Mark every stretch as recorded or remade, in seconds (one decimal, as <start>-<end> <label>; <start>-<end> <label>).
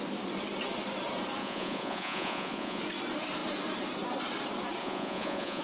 0.0-1.4 recorded; 1.4-2.8 remade; 2.8-4.8 recorded; 4.8-5.6 remade